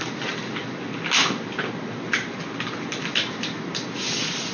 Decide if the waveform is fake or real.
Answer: real